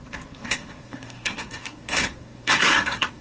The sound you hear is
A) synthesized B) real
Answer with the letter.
A